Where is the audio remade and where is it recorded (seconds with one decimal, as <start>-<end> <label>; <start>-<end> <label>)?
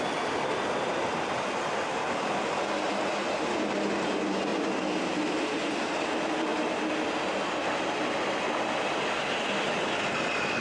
0.0-10.6 recorded